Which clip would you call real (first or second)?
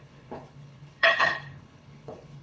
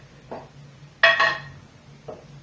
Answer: second